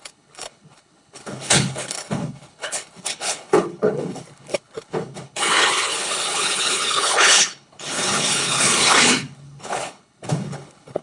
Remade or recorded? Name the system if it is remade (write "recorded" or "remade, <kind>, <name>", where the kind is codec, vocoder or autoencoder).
remade, codec, HILCodec